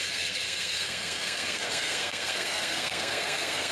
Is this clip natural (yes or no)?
no